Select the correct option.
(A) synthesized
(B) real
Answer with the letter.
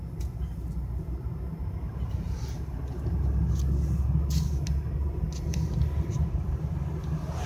B